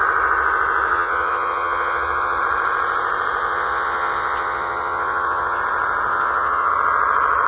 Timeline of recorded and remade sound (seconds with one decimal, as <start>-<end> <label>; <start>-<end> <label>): 0.0-0.9 recorded; 0.9-2.4 remade; 2.4-3.4 recorded; 3.4-5.6 remade; 5.6-6.1 recorded; 6.1-6.7 remade; 6.7-7.5 recorded